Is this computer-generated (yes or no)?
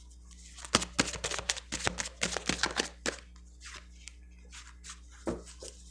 no